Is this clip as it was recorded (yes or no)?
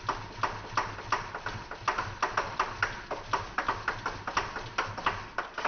yes